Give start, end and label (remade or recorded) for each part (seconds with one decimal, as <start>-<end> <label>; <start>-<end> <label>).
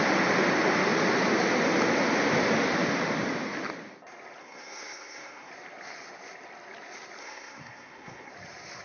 0.0-4.4 recorded; 4.4-5.5 remade; 5.5-7.2 recorded; 7.2-8.3 remade; 8.3-8.8 recorded